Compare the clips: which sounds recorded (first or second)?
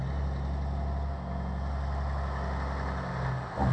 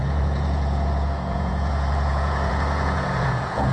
first